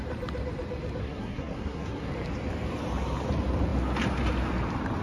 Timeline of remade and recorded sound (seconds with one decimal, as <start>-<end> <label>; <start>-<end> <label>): 0.0-1.0 recorded; 1.0-2.1 remade; 2.1-5.0 recorded